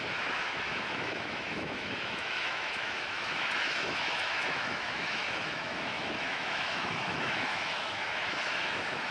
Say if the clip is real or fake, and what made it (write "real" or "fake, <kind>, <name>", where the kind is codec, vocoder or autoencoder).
fake, autoencoder, DAC-VAE